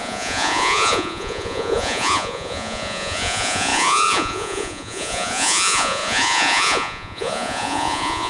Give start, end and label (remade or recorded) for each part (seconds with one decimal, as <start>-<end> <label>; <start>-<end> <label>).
0.0-8.3 remade